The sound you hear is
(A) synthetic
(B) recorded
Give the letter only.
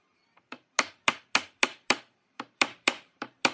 A